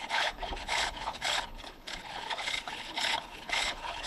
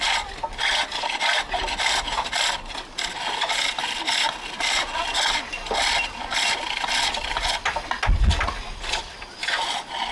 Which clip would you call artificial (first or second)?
first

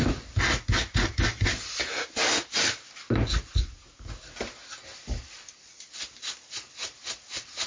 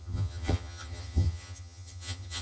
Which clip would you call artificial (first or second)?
second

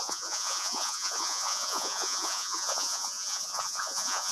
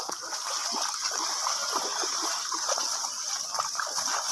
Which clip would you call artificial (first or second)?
first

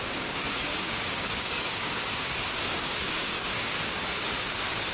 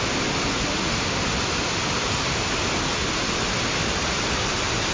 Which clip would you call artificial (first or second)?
first